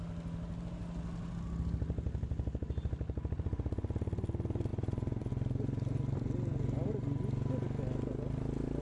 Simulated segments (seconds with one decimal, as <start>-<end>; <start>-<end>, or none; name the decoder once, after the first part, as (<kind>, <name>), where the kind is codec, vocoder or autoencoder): 4.7-5.3 (vocoder, Vocos)